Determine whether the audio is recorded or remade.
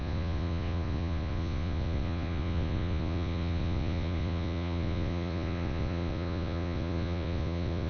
remade